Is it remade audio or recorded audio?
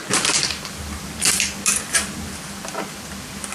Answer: remade